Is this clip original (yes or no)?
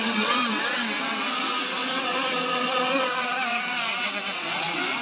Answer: no